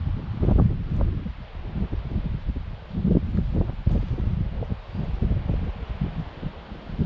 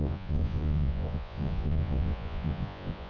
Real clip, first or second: first